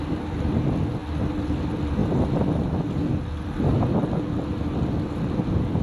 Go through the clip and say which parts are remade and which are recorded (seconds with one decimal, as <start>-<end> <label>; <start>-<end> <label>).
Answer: 0.0-5.8 recorded